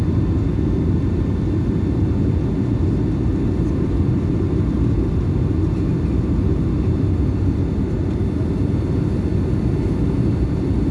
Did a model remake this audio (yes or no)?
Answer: no